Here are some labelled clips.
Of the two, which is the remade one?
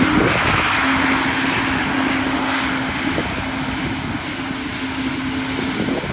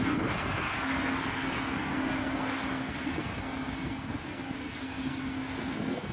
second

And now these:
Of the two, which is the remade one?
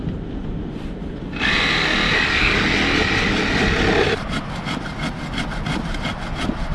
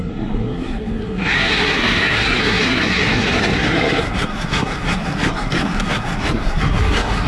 second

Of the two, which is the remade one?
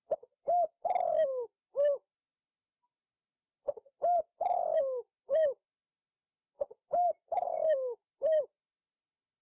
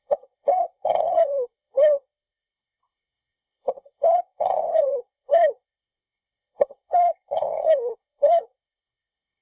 second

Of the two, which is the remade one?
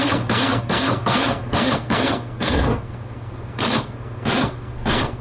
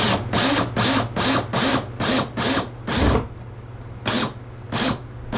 first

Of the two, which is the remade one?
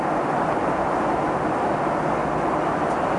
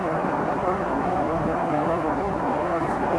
second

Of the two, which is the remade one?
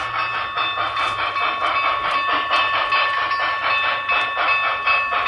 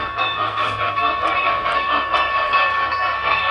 second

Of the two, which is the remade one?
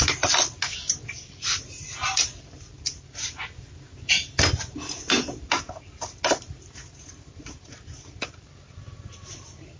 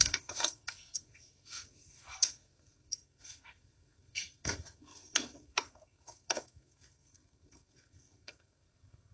second